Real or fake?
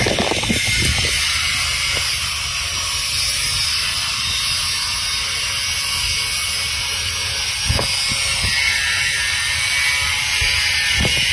real